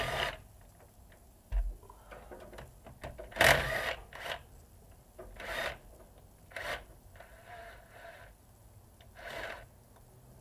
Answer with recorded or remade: recorded